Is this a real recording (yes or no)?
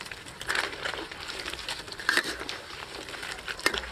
yes